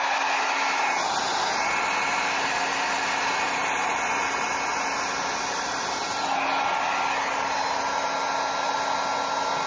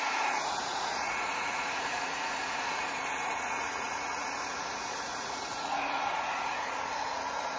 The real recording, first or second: first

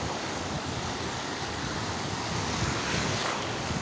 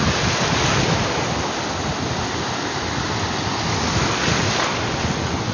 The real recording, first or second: second